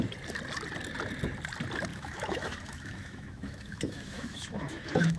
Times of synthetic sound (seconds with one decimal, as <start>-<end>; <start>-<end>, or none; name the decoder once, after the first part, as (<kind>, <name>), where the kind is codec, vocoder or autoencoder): 1.9-5.2 (autoencoder, DAC-VAE)